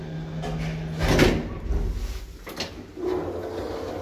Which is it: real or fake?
real